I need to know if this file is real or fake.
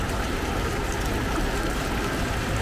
real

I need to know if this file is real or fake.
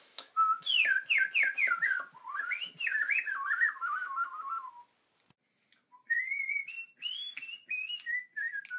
real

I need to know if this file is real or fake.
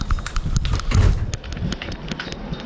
real